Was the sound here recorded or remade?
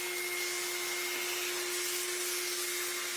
recorded